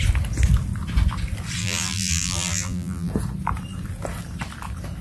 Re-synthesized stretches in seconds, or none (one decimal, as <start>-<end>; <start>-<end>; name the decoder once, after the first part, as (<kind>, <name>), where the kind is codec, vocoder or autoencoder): 1.6-3.1 (vocoder, BigVGAN v2)